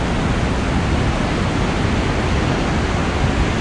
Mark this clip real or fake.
real